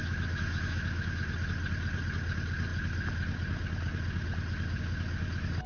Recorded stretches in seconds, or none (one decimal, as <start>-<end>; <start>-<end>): 1.3-5.7